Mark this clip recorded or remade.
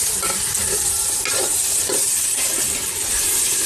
recorded